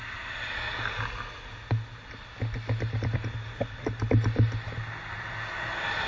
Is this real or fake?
real